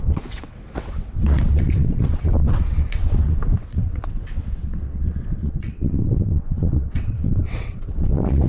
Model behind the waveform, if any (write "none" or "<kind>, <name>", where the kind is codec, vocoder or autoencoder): vocoder, WaveNeXt